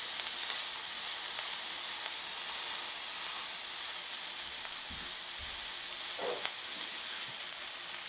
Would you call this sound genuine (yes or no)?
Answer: yes